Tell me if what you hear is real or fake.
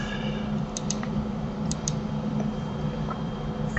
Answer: fake